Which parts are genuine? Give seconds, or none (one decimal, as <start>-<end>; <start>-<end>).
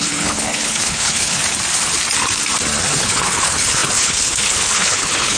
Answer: 1.4-3.0